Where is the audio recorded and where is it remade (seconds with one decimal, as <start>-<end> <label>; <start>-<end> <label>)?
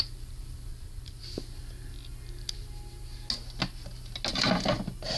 0.0-0.7 recorded; 0.7-1.2 remade; 1.2-4.3 recorded; 4.3-5.2 remade